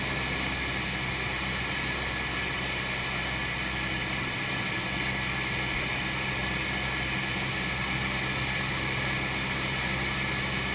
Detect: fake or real real